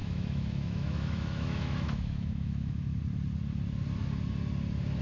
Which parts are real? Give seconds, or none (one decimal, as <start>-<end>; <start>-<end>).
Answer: 3.0-5.0